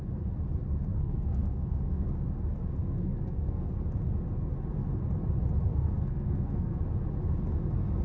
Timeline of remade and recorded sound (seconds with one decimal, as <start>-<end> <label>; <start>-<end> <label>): 0.0-0.9 recorded; 0.9-2.1 remade; 2.1-2.8 recorded; 2.8-3.7 remade; 3.7-5.7 recorded; 5.7-6.8 remade; 6.8-8.0 recorded